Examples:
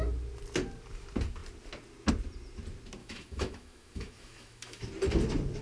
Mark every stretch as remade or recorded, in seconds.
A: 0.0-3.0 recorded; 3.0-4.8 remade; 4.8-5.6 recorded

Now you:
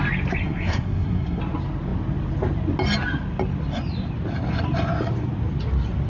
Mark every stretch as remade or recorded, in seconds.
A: 0.0-0.4 recorded; 0.4-1.4 remade; 1.4-6.1 recorded

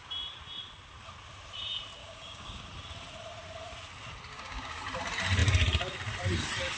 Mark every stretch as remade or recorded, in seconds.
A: 0.0-2.0 recorded; 2.0-2.6 remade; 2.6-4.3 recorded; 4.3-4.8 remade; 4.8-6.8 recorded

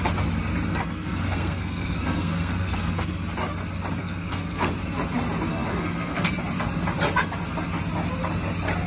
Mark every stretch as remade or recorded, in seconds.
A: 0.0-0.7 recorded; 0.7-3.1 remade; 3.1-4.0 recorded; 4.0-4.7 remade; 4.7-5.5 recorded; 5.5-6.3 remade; 6.3-8.9 recorded

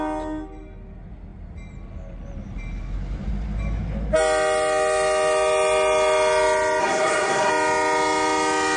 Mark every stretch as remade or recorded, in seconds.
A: 0.0-6.8 recorded; 6.8-7.5 remade; 7.5-8.8 recorded